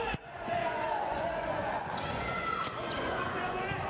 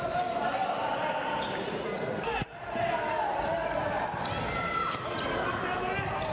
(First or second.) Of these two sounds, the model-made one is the first